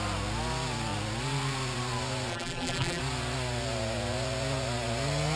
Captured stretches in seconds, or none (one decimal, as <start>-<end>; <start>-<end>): 0.0-2.3; 3.0-5.4